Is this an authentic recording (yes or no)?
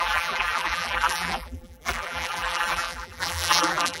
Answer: no